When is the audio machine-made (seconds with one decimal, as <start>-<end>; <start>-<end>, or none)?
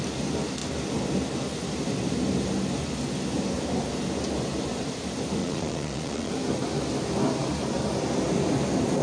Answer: 5.4-6.3